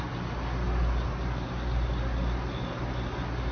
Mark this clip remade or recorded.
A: recorded